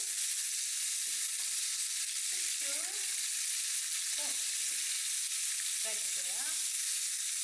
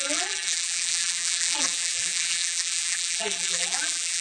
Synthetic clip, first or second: second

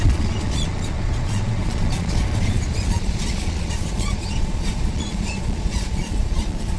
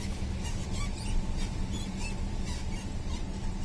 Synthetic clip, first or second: first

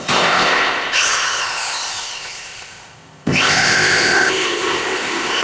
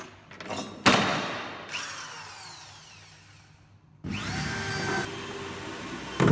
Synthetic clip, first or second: first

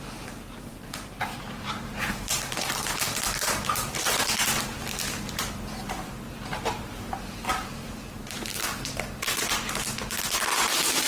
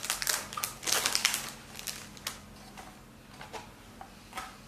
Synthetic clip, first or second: first